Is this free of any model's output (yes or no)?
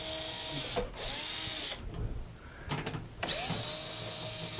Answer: yes